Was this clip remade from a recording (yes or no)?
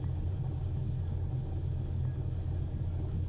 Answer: no